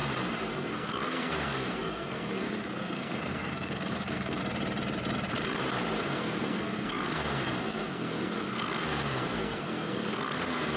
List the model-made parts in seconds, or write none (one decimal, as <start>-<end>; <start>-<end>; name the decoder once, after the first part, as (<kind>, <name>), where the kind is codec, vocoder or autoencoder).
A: 0.5-4.4 (codec, SNAC); 6.0-10.8